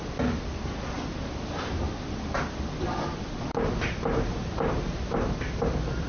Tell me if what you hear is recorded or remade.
remade